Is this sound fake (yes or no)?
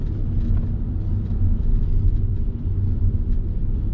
no